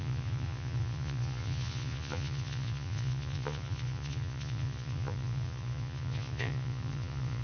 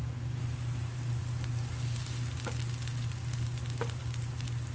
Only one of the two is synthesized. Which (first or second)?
first